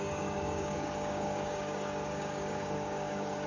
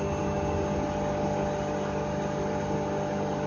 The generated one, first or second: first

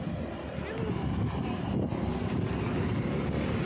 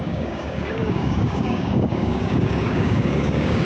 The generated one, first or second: second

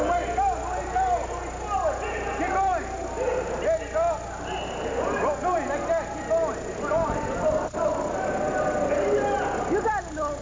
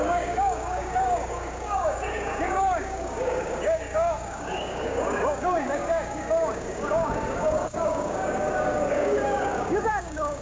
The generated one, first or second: second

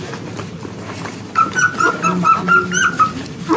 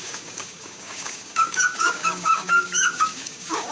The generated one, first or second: second